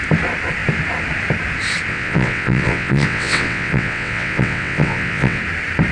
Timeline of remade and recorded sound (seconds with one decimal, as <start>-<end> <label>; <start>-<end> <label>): 0.0-1.9 recorded; 1.9-5.4 remade; 5.4-5.9 recorded

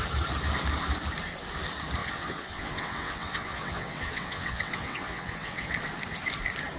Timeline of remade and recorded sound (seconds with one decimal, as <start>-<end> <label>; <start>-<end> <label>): 0.0-2.0 recorded; 2.0-5.7 remade; 5.7-6.8 recorded

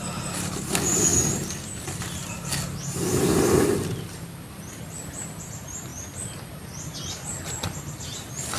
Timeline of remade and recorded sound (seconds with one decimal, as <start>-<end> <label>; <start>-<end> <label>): 0.0-8.6 recorded

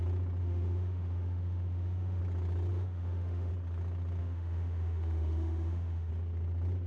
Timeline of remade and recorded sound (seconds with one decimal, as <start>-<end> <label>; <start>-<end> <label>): 0.0-0.4 recorded; 0.4-2.2 remade; 2.2-2.7 recorded; 2.7-3.5 remade; 3.5-4.2 recorded; 4.2-6.1 remade; 6.1-6.9 recorded

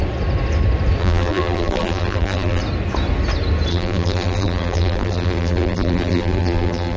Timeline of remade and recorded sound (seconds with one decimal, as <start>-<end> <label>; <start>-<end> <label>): 0.0-1.0 recorded; 1.0-2.6 remade; 2.6-3.7 recorded; 3.7-7.0 remade

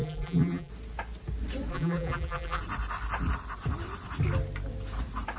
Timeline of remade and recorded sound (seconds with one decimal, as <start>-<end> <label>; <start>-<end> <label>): 0.0-0.7 remade; 0.7-1.7 recorded; 1.7-2.6 remade; 2.6-5.4 recorded

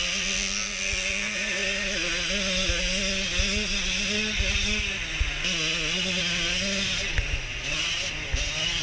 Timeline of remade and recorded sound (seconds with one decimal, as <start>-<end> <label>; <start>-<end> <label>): 0.0-8.8 recorded